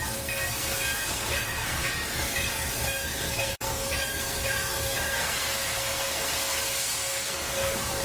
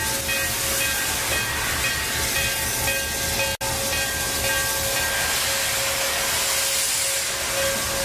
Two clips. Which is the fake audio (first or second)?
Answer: first